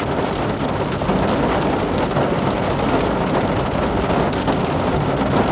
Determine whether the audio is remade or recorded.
recorded